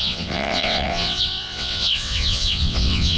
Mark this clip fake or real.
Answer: fake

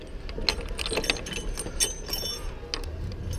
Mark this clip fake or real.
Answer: real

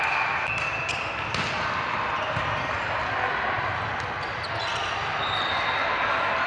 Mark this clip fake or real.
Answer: real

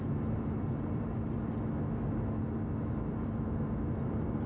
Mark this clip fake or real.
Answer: real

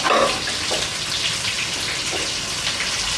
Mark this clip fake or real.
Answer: real